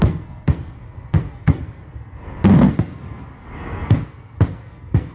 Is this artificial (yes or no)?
yes